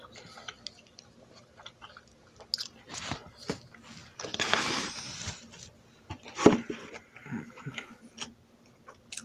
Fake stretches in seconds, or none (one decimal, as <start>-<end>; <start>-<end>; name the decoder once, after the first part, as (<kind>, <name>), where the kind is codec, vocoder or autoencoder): 7.2-8.0 (autoencoder, DAC-VAE)